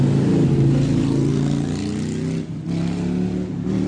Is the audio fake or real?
real